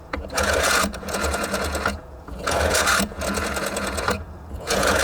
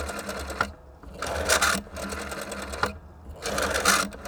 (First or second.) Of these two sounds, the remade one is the first